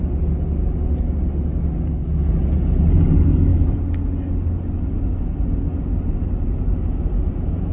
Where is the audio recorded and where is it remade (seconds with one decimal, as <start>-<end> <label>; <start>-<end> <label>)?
0.0-7.7 recorded